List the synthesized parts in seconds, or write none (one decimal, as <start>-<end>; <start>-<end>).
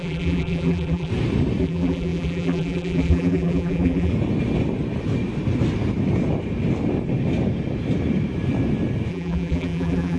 0.0-1.1; 1.6-4.1; 9.1-10.2